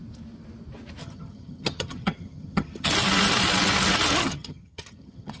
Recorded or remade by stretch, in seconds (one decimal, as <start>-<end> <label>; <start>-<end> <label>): 0.0-1.0 recorded; 1.0-2.9 remade; 2.9-4.2 recorded; 4.2-5.4 remade